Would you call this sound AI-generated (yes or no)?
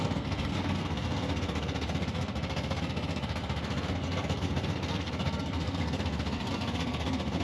yes